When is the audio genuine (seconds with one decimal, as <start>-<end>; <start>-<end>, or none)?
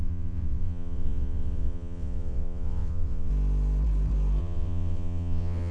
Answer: 3.3-4.4